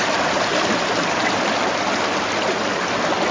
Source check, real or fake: fake